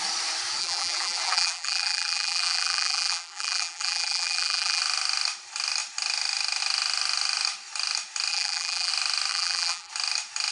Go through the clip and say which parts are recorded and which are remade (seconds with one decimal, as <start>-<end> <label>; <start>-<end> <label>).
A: 0.0-0.6 recorded; 0.6-4.8 remade; 4.8-8.3 recorded; 8.3-8.9 remade; 8.9-9.3 recorded; 9.3-9.9 remade; 9.9-10.5 recorded